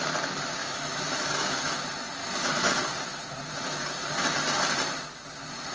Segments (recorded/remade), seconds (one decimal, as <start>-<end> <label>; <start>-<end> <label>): 0.0-0.6 recorded; 0.6-1.8 remade; 1.8-2.2 recorded; 2.2-2.7 remade; 2.7-5.7 recorded

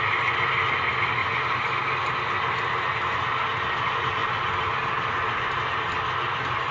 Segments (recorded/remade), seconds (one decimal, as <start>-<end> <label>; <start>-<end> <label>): 0.0-1.2 recorded; 1.2-1.7 remade; 1.7-6.7 recorded

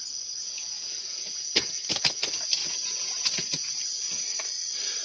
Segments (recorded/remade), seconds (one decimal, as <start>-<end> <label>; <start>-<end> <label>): 0.0-0.4 recorded; 0.4-2.2 remade; 2.2-2.6 recorded; 2.6-4.0 remade; 4.0-5.0 recorded

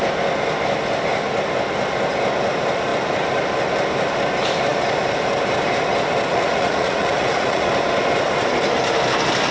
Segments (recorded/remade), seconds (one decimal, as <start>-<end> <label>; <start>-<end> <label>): 0.0-6.3 recorded; 6.3-7.7 remade; 7.7-9.5 recorded

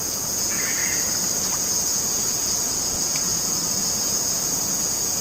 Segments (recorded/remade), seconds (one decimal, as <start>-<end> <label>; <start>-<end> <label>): 0.0-0.8 remade; 0.8-1.4 recorded; 1.4-5.2 remade

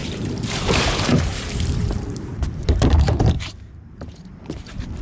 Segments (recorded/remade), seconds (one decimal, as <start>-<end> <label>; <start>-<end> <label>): 0.0-5.0 remade

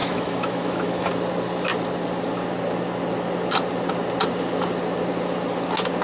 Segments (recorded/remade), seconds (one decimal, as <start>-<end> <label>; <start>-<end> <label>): 0.0-1.1 remade; 1.1-6.0 recorded